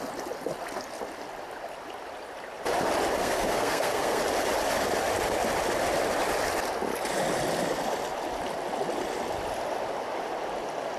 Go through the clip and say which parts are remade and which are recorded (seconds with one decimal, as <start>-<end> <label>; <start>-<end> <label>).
0.0-3.2 recorded; 3.2-4.2 remade; 4.2-11.0 recorded